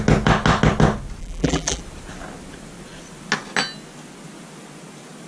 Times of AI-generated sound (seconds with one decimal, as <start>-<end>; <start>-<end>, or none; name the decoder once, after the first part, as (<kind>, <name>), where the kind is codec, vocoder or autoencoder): 1.2-1.8 (vocoder, BigVGAN v2)